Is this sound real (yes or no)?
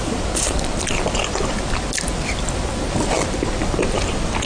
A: no